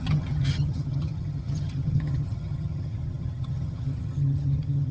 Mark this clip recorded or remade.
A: remade